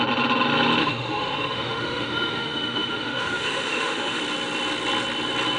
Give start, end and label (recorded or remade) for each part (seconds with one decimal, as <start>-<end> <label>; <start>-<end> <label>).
0.0-0.8 recorded; 0.8-4.2 remade; 4.2-5.6 recorded